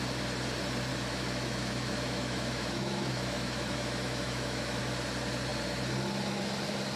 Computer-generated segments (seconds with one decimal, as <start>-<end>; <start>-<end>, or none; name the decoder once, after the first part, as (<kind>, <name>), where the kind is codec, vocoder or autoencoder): 0.9-4.8 (autoencoder, DAC-VAE)